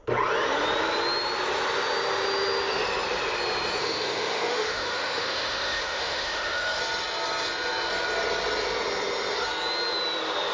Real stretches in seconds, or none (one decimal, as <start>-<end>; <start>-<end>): 0.0-3.8; 6.8-10.5